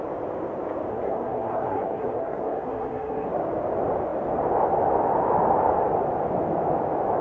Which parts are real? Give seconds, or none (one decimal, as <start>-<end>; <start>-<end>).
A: 0.0-0.9; 3.3-7.2

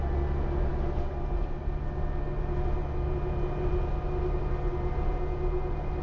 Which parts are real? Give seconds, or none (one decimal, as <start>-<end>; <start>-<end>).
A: 0.0-6.0

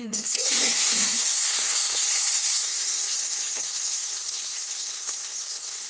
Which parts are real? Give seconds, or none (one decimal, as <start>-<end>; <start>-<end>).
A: none